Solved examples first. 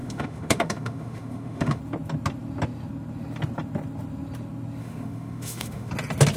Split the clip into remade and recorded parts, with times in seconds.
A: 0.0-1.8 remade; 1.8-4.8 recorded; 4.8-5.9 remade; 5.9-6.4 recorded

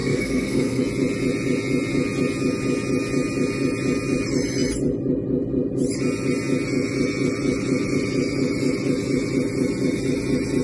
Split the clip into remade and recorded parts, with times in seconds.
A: 0.0-0.8 remade; 0.8-10.6 recorded

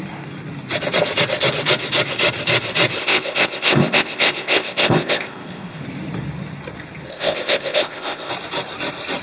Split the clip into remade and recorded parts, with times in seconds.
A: 0.0-3.0 recorded; 3.0-5.8 remade; 5.8-7.1 recorded; 7.1-8.3 remade; 8.3-9.2 recorded

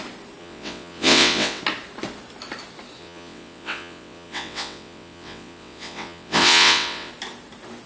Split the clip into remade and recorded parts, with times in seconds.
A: 0.0-0.4 recorded; 0.4-1.6 remade; 1.6-3.0 recorded; 3.0-7.1 remade; 7.1-7.9 recorded